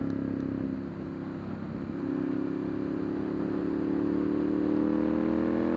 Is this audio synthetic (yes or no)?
no